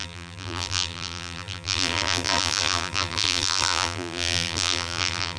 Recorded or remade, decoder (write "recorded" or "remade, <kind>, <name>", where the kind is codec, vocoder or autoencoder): remade, vocoder, BigVGAN v2